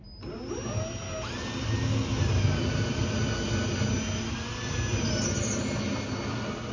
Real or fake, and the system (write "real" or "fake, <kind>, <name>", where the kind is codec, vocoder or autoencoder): real